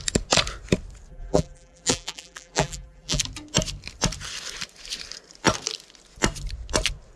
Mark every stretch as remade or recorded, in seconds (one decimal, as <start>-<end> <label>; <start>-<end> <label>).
0.0-1.1 recorded; 1.1-3.2 remade; 3.2-7.2 recorded